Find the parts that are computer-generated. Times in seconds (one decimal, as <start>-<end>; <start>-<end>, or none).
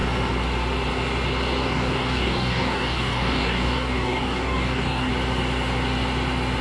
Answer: 1.6-5.1